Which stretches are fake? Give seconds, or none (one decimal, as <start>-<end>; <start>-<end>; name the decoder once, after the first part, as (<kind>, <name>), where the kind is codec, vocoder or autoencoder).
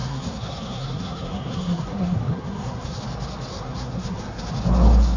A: 0.0-3.0 (codec, SNAC); 3.5-4.5